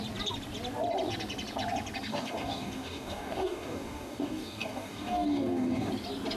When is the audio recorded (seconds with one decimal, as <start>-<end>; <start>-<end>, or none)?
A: 0.0-2.1; 5.9-6.4